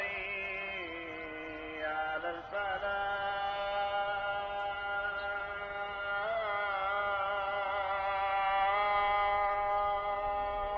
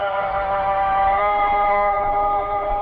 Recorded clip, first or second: first